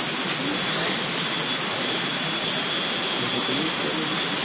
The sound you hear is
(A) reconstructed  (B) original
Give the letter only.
B